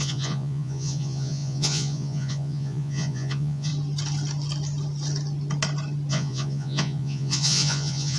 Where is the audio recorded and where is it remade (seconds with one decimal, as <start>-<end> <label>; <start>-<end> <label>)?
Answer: 0.0-3.7 remade; 3.7-6.1 recorded; 6.1-8.2 remade